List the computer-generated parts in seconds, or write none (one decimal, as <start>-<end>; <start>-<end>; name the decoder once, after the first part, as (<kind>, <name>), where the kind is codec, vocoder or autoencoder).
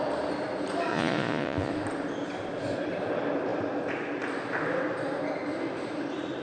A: 0.9-1.7 (vocoder, Vocos)